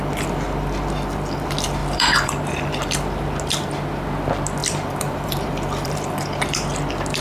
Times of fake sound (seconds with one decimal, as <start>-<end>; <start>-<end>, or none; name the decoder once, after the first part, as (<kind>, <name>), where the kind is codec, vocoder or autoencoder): 1.8-2.3 (vocoder, BigVGAN v2); 4.6-6.1

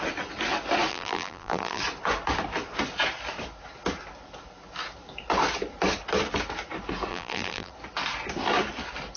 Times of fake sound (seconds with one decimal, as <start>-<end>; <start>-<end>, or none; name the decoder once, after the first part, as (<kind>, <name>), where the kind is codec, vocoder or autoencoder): 0.9-1.8 (vocoder, BigVGAN v2); 7.1-7.7

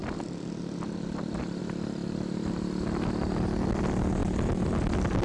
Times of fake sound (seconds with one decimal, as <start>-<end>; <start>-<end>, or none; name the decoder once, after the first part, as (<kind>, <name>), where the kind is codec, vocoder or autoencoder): none

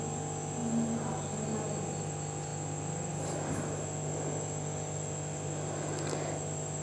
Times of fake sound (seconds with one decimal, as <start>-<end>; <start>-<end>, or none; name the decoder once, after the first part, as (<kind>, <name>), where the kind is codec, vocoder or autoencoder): none

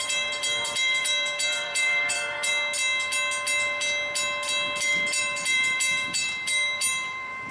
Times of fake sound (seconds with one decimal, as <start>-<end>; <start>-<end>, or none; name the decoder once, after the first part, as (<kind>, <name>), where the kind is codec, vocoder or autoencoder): 0.0-2.5 (vocoder, BigVGAN v2); 5.2-7.5